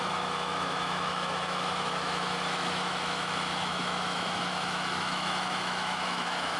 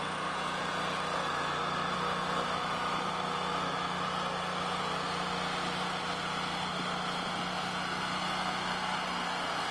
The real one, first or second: second